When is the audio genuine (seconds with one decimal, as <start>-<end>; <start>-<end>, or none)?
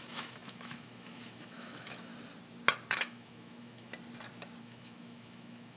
2.1-2.9; 3.9-4.6